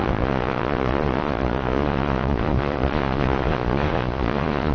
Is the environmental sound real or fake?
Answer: fake